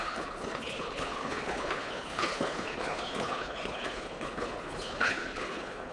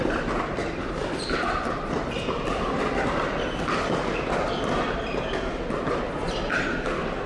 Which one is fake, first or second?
first